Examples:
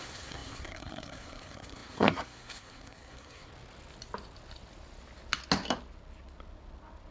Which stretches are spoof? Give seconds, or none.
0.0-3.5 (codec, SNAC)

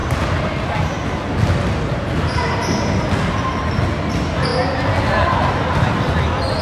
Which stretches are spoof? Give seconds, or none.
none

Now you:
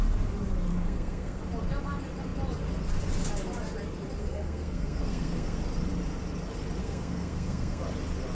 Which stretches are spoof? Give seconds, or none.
0.7-1.4 (codec, SNAC); 4.2-5.6; 6.8-7.8

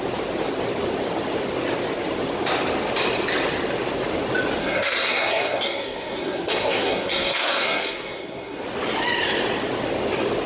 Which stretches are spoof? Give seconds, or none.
4.6-8.6 (codec, SNAC)

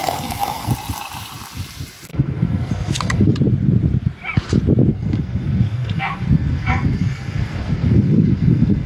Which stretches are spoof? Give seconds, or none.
0.0-0.7 (codec, SNAC); 2.1-3.3; 4.9-8.9